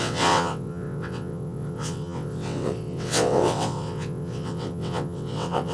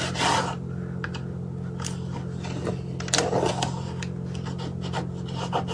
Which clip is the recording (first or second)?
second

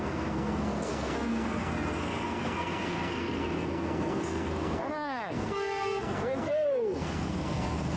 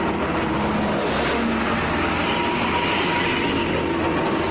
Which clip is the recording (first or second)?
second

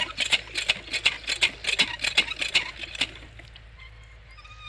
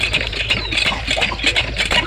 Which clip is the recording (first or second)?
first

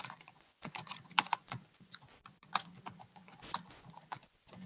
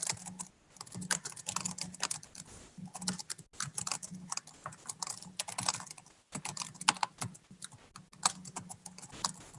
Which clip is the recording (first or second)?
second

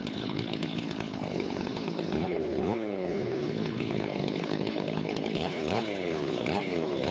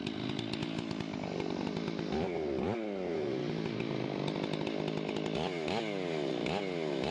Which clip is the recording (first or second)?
second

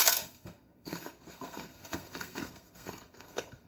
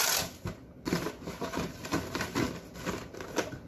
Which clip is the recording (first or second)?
second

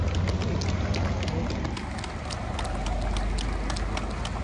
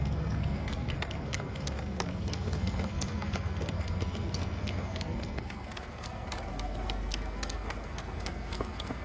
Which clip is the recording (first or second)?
first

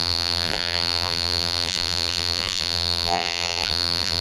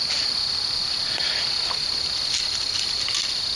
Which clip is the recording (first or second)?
second